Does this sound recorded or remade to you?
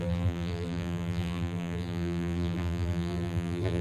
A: remade